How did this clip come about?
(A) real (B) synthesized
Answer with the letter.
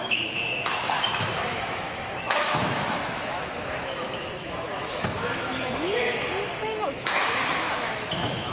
B